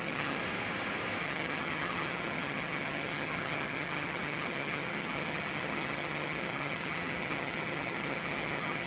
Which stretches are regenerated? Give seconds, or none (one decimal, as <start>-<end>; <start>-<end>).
0.0-0.4; 1.2-8.9